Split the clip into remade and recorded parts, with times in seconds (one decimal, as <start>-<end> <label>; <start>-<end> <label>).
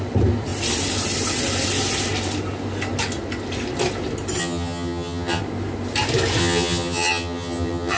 0.0-4.4 recorded; 4.4-5.4 remade; 5.4-6.4 recorded; 6.4-8.0 remade